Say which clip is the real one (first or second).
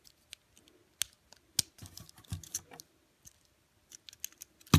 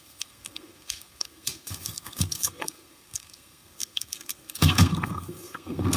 first